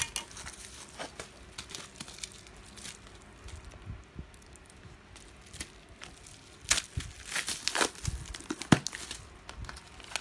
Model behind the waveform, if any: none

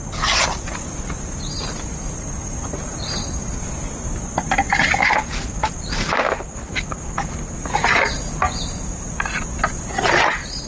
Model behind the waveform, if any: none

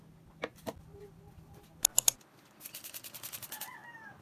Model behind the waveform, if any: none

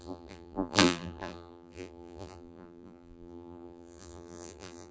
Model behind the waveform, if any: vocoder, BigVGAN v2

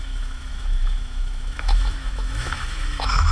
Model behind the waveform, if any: autoencoder, DAC-VAE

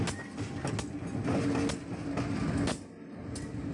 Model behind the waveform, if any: none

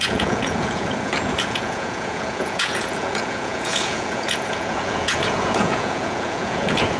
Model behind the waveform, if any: vocoder, Vocos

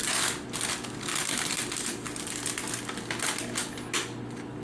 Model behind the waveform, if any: none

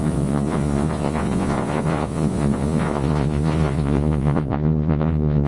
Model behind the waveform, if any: vocoder, Vocos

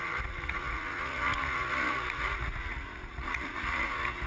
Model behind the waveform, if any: vocoder, Vocos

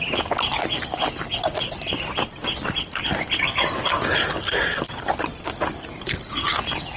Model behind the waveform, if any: none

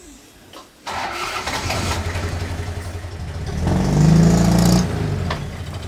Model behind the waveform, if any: none